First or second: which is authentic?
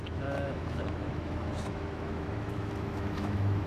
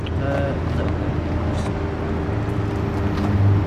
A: second